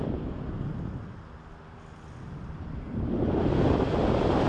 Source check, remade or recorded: recorded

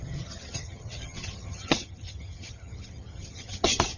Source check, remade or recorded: remade